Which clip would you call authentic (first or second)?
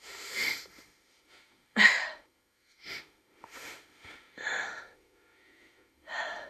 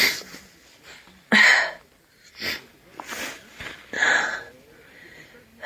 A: second